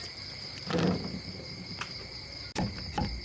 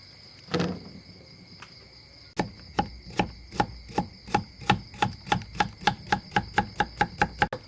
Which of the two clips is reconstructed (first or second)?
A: first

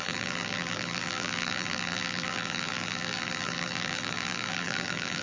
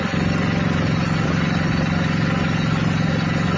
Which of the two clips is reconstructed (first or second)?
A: first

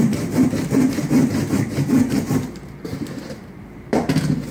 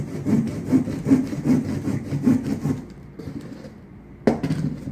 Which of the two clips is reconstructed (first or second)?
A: first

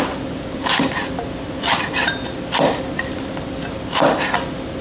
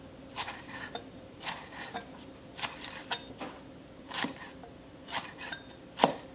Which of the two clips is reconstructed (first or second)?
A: second